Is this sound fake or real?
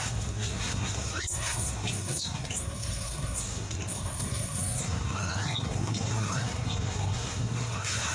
fake